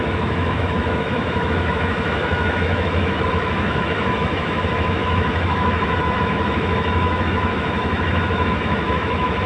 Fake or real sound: fake